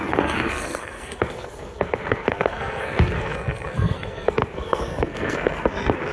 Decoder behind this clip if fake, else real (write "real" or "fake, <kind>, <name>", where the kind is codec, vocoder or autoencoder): fake, codec, SNAC